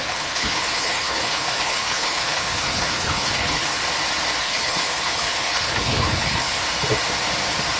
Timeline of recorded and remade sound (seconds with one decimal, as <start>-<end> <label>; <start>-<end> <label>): 0.0-3.8 remade; 3.8-4.4 recorded; 4.4-6.6 remade; 6.6-7.8 recorded